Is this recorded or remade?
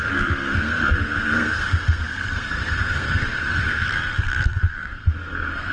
remade